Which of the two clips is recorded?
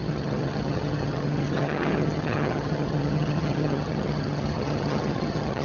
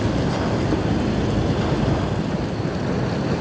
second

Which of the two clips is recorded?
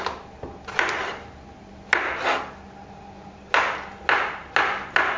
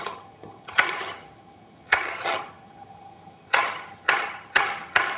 first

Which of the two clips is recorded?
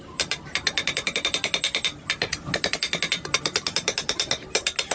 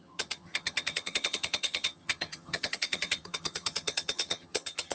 first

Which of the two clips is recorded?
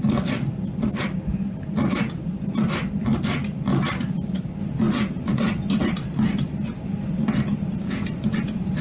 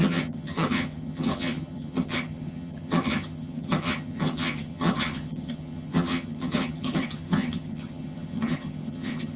first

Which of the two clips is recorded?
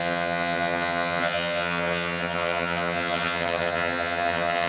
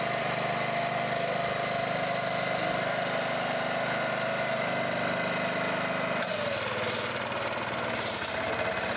second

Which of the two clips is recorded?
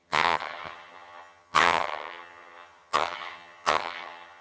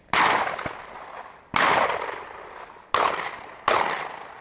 second